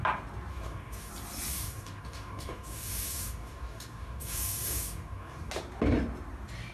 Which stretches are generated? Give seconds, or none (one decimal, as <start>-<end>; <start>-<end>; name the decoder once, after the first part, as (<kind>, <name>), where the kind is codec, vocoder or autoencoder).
0.5-1.1 (codec, DAC); 1.5-5.5